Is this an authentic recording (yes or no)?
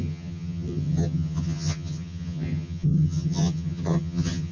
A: no